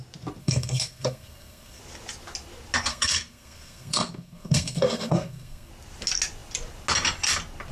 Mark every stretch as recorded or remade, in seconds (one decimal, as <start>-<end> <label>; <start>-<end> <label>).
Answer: 0.0-0.4 recorded; 0.4-1.8 remade; 1.8-2.9 recorded; 2.9-5.7 remade; 5.7-7.7 recorded